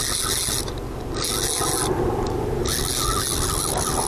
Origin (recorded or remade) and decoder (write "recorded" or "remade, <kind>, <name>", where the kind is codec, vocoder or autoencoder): recorded